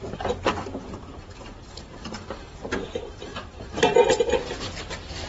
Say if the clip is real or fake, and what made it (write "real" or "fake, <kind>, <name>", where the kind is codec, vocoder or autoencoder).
fake, vocoder, BigVGAN v2